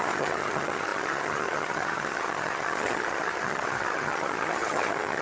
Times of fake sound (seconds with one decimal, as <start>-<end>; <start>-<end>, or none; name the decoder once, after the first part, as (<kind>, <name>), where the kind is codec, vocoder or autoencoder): 0.0-5.2 (vocoder, HiFi-GAN)